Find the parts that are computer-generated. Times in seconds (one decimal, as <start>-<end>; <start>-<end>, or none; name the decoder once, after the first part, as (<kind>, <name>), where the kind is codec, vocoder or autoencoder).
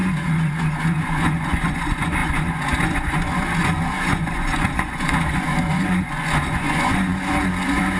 0.0-8.0 (vocoder, Vocos)